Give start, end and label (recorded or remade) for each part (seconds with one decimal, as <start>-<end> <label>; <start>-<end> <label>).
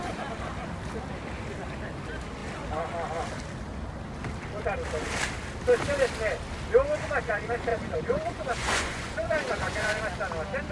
0.0-7.7 recorded; 7.7-10.0 remade; 10.0-10.7 recorded